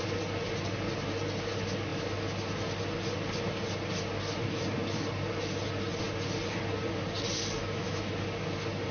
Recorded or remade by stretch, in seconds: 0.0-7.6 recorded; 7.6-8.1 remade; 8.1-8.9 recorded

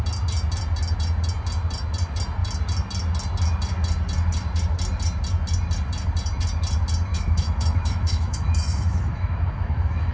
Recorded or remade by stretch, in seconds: 0.0-7.1 recorded; 7.1-10.1 remade

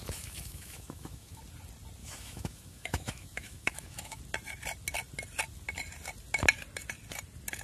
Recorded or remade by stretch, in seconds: 0.0-1.4 remade; 1.4-2.0 recorded; 2.0-4.2 remade; 4.2-7.6 recorded

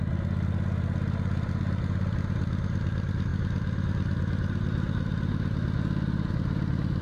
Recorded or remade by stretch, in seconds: 0.0-7.0 recorded

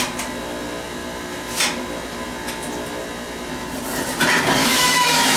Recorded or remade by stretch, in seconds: 0.0-4.6 recorded; 4.6-5.4 remade

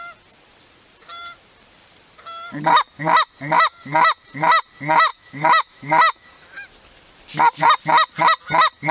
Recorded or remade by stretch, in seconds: 0.0-5.1 recorded; 5.1-6.3 remade; 6.3-8.9 recorded

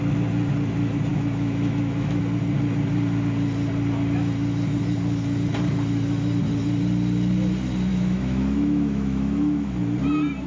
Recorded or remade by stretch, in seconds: 0.0-1.1 recorded; 1.1-2.2 remade; 2.2-7.9 recorded; 7.9-9.7 remade; 9.7-10.5 recorded

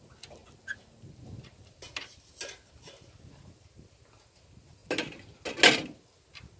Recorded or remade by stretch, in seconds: 0.0-6.6 recorded